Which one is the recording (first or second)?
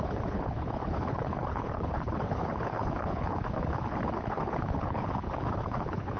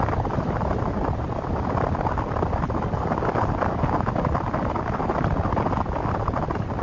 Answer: second